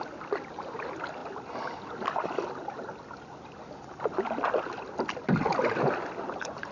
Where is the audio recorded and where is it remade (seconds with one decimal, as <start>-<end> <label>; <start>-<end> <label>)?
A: 0.0-6.7 recorded